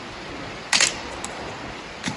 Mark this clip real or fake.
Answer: real